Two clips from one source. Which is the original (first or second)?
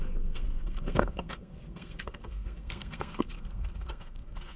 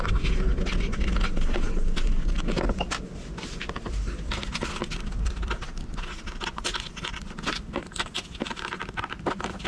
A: second